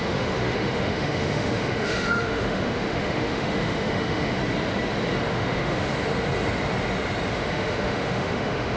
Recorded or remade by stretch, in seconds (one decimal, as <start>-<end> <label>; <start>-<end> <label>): 0.0-4.4 remade; 4.4-5.3 recorded; 5.3-5.9 remade; 5.9-7.3 recorded; 7.3-8.8 remade